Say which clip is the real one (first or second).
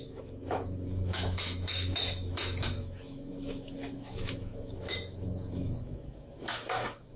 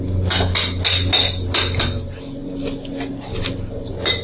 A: second